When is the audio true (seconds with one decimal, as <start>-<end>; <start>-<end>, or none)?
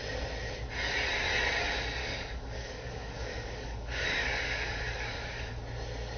0.0-2.0; 5.5-6.2